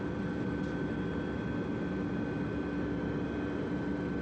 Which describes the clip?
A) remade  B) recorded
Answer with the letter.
B